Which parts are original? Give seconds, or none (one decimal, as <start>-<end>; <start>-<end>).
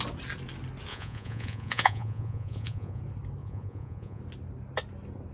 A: 0.0-0.9; 3.0-3.4; 4.2-5.3